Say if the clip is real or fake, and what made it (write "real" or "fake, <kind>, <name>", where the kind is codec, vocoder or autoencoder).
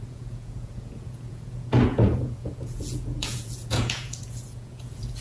fake, vocoder, Vocos